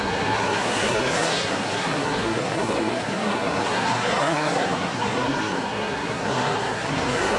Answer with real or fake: fake